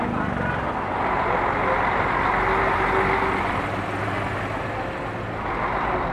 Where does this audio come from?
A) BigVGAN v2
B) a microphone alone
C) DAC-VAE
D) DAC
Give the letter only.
B